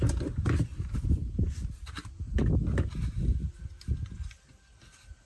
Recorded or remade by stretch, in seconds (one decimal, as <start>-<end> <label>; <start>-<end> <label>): 0.0-5.3 recorded